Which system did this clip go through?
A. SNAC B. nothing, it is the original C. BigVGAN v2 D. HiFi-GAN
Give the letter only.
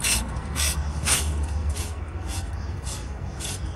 A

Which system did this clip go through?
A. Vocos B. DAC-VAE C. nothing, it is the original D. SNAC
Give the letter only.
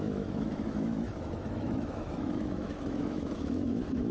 B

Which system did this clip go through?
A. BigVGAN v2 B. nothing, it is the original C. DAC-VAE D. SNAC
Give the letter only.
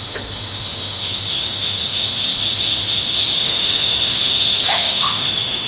C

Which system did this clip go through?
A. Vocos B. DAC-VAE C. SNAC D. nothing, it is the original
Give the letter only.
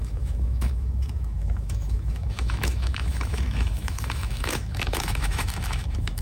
B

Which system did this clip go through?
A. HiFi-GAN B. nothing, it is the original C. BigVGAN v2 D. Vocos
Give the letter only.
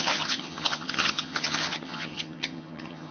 A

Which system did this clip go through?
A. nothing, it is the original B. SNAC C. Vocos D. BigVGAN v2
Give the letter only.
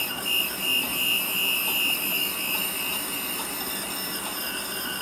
A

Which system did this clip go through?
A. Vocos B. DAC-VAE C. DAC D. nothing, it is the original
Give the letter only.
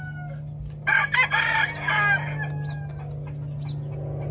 D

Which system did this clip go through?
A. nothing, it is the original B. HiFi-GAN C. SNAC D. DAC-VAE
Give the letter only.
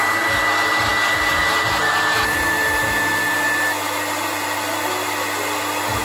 A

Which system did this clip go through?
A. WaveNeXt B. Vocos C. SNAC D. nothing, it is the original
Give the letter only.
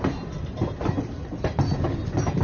D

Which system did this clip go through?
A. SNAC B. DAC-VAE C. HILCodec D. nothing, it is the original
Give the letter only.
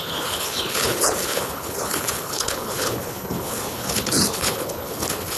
C